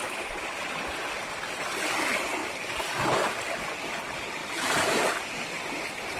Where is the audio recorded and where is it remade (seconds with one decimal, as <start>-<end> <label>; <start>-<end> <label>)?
0.0-1.9 remade; 1.9-2.4 recorded; 2.4-3.3 remade; 3.3-4.4 recorded; 4.4-5.2 remade; 5.2-6.2 recorded